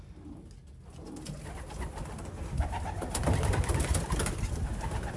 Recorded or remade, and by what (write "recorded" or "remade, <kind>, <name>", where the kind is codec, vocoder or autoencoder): recorded